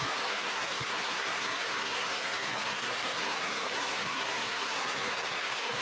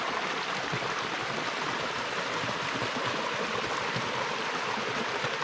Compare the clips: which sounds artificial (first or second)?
first